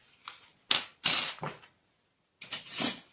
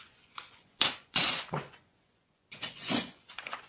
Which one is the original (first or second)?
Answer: first